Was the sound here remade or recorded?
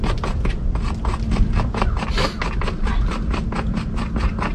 recorded